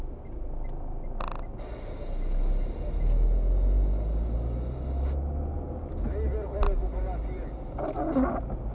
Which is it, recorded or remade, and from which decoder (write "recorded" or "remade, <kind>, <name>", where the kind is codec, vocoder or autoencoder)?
recorded